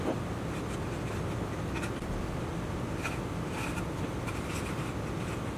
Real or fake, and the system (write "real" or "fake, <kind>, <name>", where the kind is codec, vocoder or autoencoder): real